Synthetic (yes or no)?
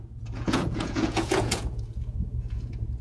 yes